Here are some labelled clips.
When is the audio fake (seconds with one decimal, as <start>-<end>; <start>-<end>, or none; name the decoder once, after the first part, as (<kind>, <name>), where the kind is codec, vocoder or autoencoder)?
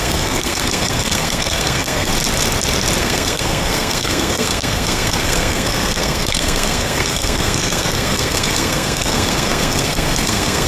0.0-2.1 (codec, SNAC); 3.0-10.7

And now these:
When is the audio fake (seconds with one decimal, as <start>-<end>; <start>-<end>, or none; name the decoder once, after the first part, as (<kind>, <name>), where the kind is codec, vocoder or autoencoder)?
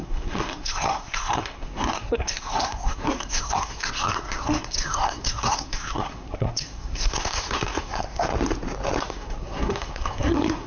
0.0-8.3 (codec, SNAC); 9.0-10.7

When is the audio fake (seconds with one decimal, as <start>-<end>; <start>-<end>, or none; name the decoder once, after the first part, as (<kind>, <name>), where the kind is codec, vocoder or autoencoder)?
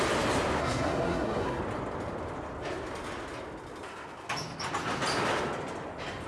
0.6-1.6 (codec, SNAC)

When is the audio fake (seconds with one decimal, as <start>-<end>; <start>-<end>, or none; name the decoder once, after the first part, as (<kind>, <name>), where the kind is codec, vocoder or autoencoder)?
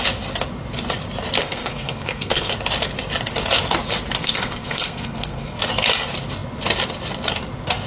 1.4-2.5 (codec, SNAC); 4.2-5.6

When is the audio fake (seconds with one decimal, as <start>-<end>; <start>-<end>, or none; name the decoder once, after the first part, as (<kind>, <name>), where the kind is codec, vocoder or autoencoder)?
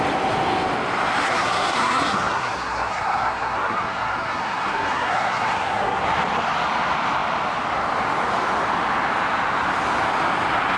1.2-6.0 (codec, SNAC)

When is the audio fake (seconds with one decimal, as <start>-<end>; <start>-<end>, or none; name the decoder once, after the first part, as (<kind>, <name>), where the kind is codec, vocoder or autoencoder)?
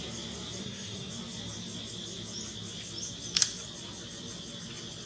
0.6-1.1 (codec, SNAC)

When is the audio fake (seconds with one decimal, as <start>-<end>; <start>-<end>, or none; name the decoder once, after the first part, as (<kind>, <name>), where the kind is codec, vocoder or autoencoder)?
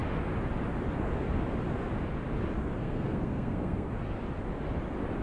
2.8-3.9 (codec, SNAC)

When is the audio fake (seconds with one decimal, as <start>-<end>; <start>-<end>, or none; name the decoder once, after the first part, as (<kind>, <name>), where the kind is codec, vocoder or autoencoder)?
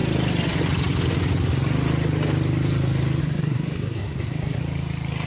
3.2-4.6 (codec, SNAC)